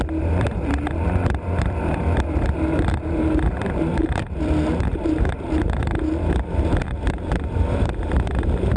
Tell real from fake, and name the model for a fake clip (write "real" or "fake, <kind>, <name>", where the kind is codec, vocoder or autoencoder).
fake, vocoder, BigVGAN v2